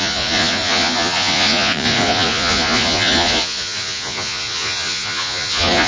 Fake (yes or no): yes